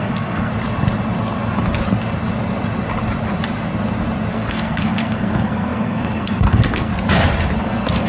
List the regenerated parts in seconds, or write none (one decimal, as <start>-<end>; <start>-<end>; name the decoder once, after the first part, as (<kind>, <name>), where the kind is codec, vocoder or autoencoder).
0.0-0.5 (codec, SNAC); 4.3-6.9; 7.6-8.1